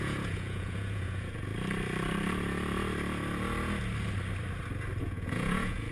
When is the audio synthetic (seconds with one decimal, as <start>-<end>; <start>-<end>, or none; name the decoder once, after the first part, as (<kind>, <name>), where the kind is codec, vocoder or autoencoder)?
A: 0.0-1.5 (vocoder, Vocos); 5.0-5.9